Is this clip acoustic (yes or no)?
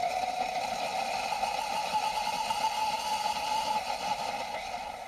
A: yes